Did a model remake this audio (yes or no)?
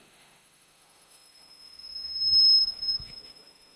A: yes